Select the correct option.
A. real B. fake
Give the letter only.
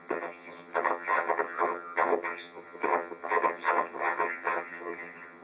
B